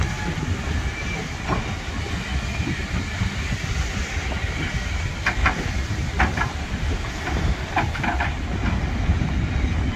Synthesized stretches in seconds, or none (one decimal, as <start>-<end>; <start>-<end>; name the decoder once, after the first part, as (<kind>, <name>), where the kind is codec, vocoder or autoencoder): 5.4-7.8 (vocoder, BigVGAN v2)